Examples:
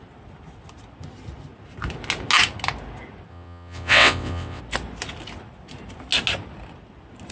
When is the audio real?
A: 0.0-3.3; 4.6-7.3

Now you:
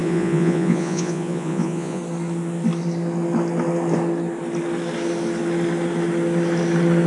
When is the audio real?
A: 2.0-7.1

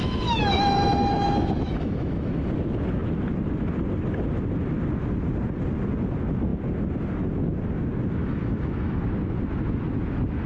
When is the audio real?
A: 2.5-8.2; 9.0-10.5

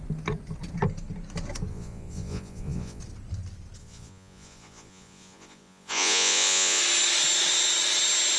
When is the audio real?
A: 0.0-1.7; 3.0-3.8; 6.8-8.4

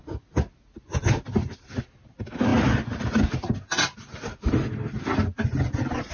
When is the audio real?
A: 0.0-6.1

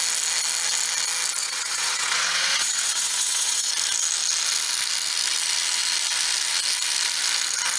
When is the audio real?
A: 0.0-1.4; 3.7-7.8